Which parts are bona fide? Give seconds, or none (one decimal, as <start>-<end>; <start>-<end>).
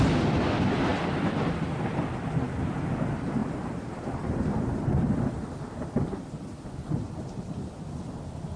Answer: 0.0-0.9; 1.6-3.4; 7.8-8.6